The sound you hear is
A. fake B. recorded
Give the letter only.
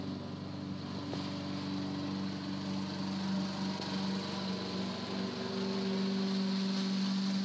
B